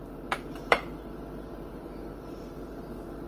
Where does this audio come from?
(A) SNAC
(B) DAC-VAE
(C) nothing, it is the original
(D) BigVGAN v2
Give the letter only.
D